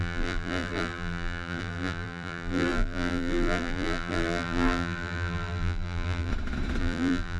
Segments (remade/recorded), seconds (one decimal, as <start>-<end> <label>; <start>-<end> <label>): 0.0-6.3 remade; 6.3-6.8 recorded; 6.8-7.4 remade